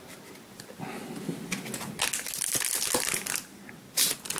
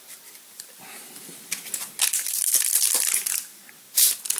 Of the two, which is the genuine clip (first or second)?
first